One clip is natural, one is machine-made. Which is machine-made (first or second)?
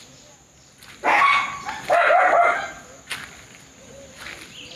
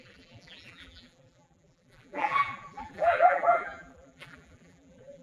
second